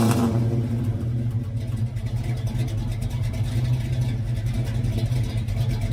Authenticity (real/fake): real